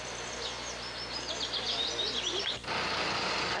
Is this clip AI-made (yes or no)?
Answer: no